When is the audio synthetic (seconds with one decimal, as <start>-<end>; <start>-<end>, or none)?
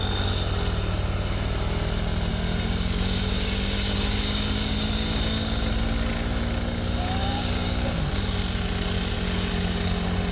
2.3-5.7; 7.2-8.0